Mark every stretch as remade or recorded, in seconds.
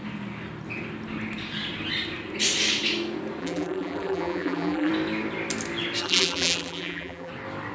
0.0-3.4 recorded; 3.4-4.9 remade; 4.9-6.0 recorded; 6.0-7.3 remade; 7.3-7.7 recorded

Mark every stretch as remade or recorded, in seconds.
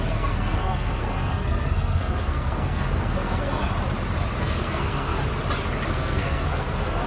0.0-3.6 remade; 3.6-4.4 recorded; 4.4-5.1 remade; 5.1-5.9 recorded; 5.9-7.1 remade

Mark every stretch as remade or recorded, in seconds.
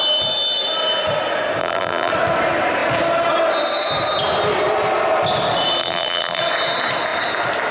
0.0-1.6 recorded; 1.6-2.1 remade; 2.1-5.8 recorded; 5.8-6.4 remade; 6.4-7.7 recorded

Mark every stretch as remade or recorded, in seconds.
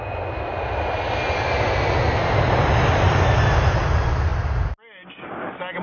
0.0-5.8 recorded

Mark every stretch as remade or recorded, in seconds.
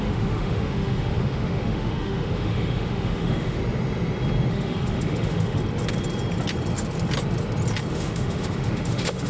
0.0-3.6 remade; 3.6-4.5 recorded; 4.5-5.6 remade; 5.6-7.9 recorded; 7.9-9.3 remade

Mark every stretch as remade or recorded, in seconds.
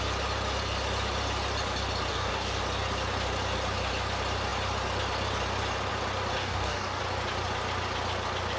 0.0-2.1 recorded; 2.1-2.6 remade; 2.6-6.4 recorded; 6.4-7.0 remade; 7.0-8.6 recorded